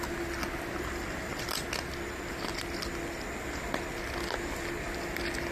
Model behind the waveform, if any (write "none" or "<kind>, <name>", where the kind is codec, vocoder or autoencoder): none